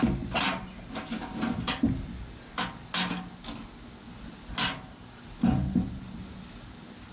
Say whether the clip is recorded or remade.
recorded